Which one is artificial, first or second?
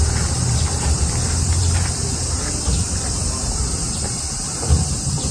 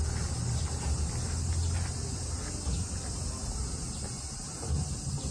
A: first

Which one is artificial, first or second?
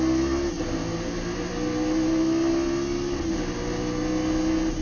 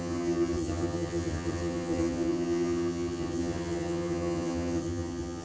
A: second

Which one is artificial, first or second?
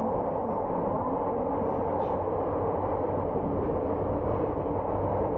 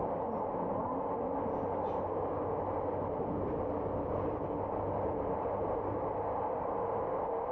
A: first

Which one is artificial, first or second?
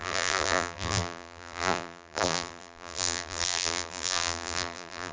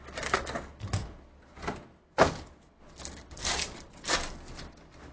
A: first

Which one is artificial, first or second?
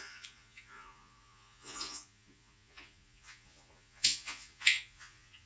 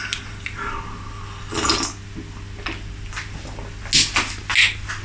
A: first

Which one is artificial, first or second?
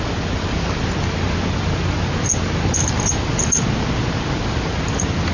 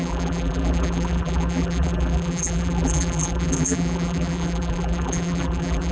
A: second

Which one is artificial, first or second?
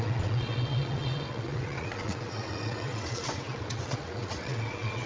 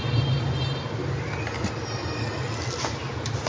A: first